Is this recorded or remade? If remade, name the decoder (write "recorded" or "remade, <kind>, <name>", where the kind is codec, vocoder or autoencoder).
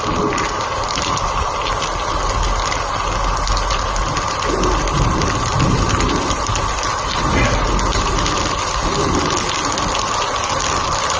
recorded